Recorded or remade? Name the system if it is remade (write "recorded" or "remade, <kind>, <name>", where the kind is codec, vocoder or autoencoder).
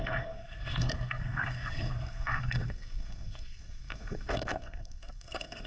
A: remade, codec, SNAC